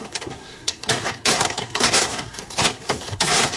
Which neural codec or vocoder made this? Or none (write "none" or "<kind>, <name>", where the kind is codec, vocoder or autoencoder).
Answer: codec, SNAC